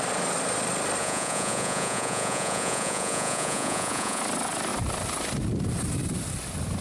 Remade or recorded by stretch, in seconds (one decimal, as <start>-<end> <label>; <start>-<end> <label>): 0.0-1.0 recorded; 1.0-4.2 remade; 4.2-6.8 recorded